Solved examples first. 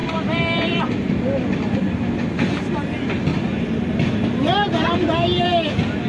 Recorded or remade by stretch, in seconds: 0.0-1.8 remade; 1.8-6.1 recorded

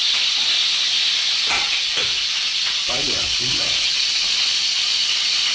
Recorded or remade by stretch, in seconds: 0.0-1.4 recorded; 1.4-4.2 remade; 4.2-5.5 recorded

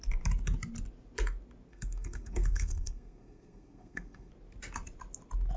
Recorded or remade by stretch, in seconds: 0.0-1.7 recorded; 1.7-4.3 remade; 4.3-5.6 recorded